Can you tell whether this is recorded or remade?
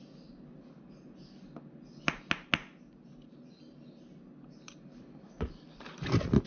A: recorded